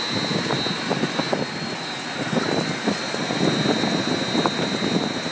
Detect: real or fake real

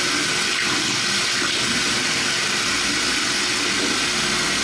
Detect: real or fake real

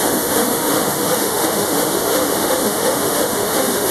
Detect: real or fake fake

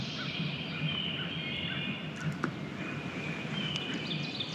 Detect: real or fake real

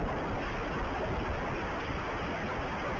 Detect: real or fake real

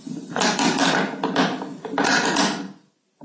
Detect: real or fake real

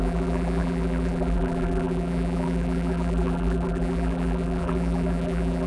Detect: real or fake fake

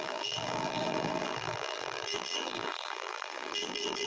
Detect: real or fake fake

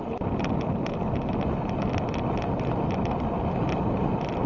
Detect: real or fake real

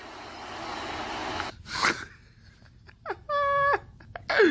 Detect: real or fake real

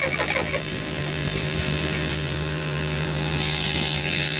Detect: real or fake fake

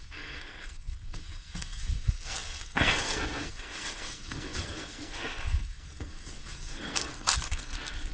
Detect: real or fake fake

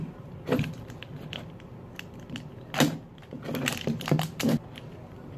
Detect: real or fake real